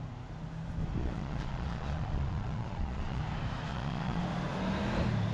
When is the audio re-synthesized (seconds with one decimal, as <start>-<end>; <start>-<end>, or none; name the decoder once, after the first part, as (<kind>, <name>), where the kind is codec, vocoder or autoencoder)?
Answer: 1.0-3.2 (vocoder, Vocos); 3.7-4.2